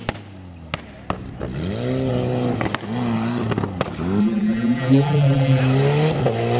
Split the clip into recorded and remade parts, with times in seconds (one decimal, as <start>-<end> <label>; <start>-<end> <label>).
0.0-4.2 recorded; 4.2-5.6 remade; 5.6-6.6 recorded